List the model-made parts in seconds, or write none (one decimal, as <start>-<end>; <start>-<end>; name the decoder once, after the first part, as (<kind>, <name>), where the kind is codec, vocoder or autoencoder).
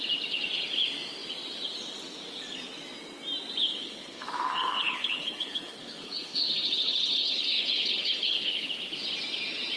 3.6-8.7 (codec, HILCodec)